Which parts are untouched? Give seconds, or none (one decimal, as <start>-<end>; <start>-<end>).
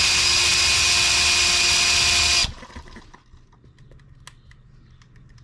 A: 0.0-5.4